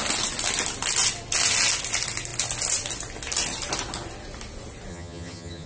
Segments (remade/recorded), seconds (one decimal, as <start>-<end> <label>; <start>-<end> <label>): 0.0-4.9 recorded; 4.9-5.7 remade